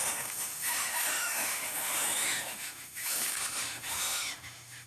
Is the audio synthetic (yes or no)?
yes